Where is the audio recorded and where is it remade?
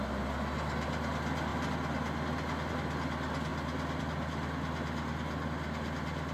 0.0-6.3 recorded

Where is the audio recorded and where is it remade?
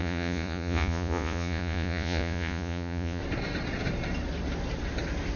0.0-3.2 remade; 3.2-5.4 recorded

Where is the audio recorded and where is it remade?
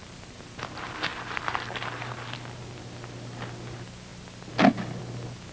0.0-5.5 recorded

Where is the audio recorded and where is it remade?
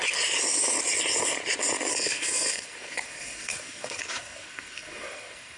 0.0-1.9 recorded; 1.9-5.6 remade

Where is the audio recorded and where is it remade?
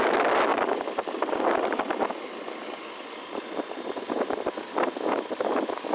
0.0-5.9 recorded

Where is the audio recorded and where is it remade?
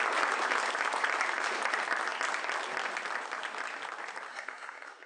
0.0-4.3 recorded; 4.3-5.1 remade